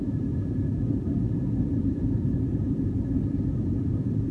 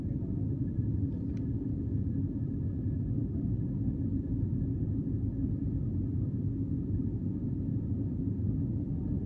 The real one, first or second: second